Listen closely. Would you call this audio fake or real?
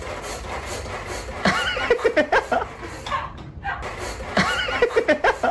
real